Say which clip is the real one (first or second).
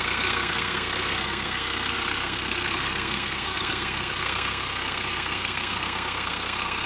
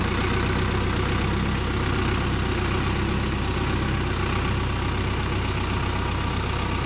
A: second